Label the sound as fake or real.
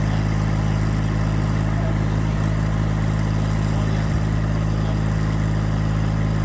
real